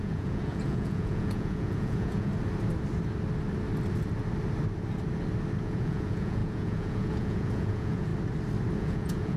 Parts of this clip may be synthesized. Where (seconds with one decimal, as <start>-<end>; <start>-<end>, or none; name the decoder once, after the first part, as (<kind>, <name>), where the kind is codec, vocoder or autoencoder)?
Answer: 0.0-2.3 (vocoder, Vocos); 5.6-8.1; 8.8-9.4